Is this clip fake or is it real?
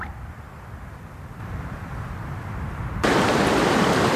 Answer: real